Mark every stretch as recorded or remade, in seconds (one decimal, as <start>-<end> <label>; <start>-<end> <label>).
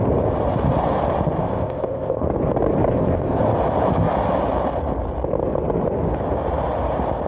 0.0-1.4 recorded; 1.4-2.3 remade; 2.3-2.9 recorded; 2.9-3.4 remade; 3.4-7.3 recorded